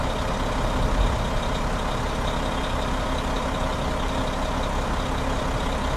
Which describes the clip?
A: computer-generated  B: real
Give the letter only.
B